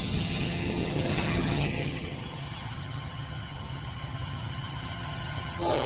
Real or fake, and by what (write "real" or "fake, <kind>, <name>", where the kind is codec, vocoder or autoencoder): fake, vocoder, HiFi-GAN